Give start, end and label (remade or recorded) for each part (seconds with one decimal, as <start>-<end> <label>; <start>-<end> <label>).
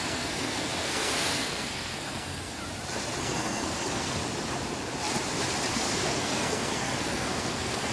0.0-2.6 remade; 2.6-3.2 recorded; 3.2-4.2 remade; 4.2-5.7 recorded; 5.7-7.9 remade